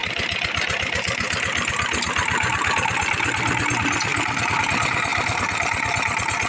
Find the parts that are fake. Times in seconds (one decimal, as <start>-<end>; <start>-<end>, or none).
none

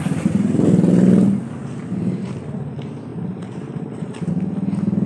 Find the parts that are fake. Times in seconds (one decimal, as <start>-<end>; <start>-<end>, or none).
none

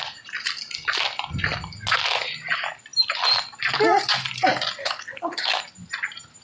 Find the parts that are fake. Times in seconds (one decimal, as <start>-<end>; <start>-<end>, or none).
4.8-5.6

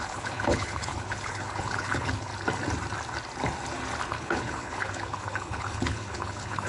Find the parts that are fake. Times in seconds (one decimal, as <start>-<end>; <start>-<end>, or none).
0.0-2.3; 4.1-6.7